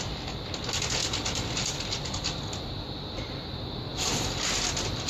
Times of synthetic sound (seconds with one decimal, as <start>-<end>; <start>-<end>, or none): none